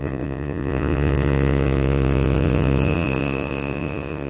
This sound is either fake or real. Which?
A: fake